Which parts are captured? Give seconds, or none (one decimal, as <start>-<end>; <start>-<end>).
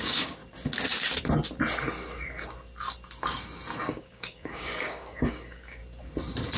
0.4-3.9; 5.8-6.6